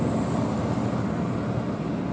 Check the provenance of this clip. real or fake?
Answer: real